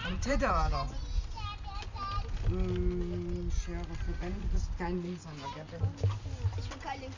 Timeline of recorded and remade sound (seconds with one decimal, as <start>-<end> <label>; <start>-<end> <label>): 0.0-0.5 remade; 0.5-7.2 recorded